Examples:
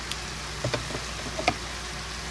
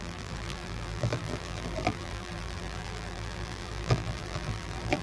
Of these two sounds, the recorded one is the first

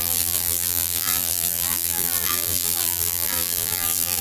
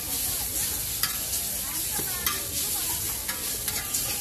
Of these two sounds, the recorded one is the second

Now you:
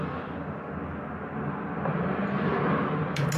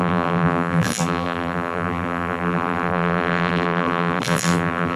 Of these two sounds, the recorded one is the first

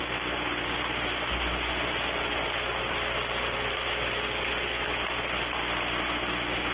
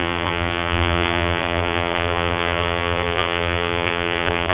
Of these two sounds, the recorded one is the first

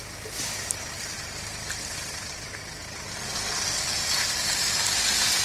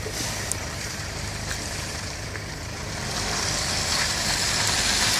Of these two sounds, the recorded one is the first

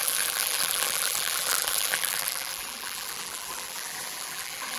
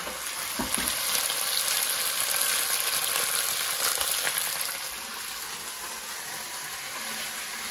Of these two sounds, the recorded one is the second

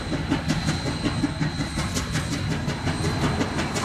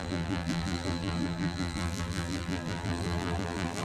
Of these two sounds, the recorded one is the first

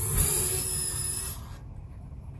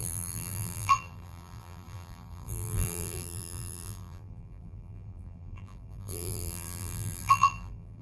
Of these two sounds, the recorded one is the first